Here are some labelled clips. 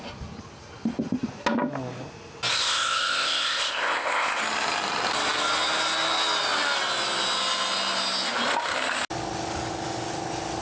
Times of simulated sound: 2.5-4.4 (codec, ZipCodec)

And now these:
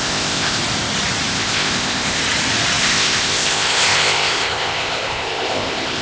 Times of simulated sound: 0.0-0.6 (codec, ZipCodec); 1.3-2.2; 2.8-6.0

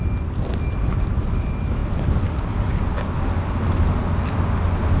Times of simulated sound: none

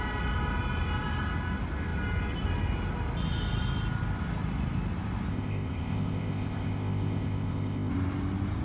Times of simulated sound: 5.3-7.9 (codec, ZipCodec)

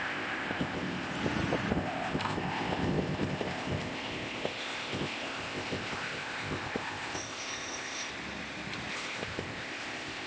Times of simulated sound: 0.0-1.1 (codec, ZipCodec); 1.7-8.1; 8.9-10.3

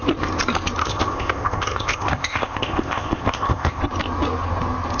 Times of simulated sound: 0.8-3.8 (codec, ZipCodec)

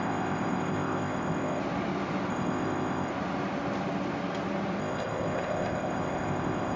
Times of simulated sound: 0.0-1.6 (codec, ZipCodec); 2.3-3.1; 4.8-6.8